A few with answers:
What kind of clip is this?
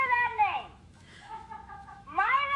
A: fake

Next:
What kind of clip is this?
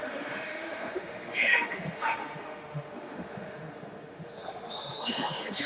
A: fake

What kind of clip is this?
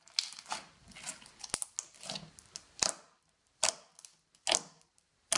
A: real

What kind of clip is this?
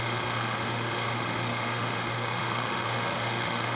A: fake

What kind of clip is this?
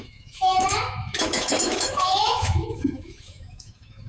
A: fake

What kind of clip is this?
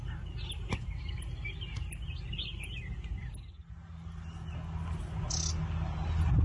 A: real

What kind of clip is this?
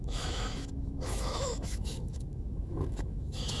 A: fake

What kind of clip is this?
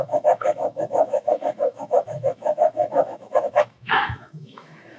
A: fake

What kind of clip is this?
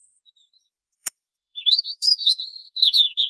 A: fake